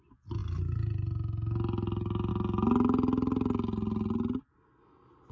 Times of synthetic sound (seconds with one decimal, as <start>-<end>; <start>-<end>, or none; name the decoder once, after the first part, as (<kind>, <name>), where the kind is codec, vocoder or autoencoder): none